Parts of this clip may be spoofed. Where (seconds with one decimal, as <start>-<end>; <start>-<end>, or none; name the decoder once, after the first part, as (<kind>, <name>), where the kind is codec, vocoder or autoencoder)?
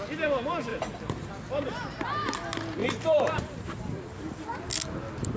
0.7-1.3 (vocoder, BigVGAN v2); 2.8-4.6